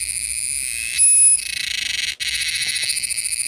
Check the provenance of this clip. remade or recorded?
recorded